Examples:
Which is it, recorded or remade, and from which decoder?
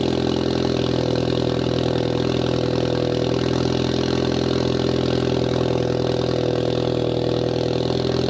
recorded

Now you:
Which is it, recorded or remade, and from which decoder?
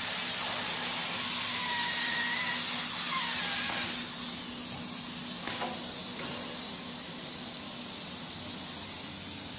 recorded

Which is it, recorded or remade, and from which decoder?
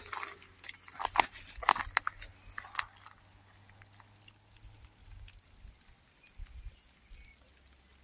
recorded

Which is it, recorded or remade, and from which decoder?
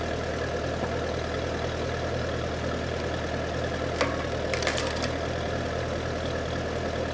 recorded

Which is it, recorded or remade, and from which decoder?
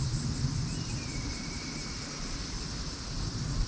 recorded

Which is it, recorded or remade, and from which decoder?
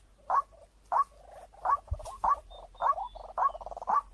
recorded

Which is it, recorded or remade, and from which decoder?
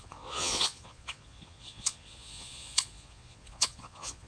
remade, vocoder, Vocos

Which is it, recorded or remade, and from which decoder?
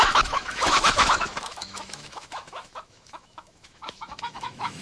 remade, autoencoder, DAC-VAE